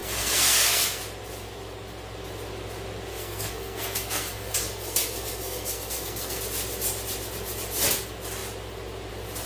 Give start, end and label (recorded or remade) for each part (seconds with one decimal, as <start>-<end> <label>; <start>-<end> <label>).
0.0-1.0 remade; 1.0-3.1 recorded; 3.1-6.4 remade; 6.4-9.5 recorded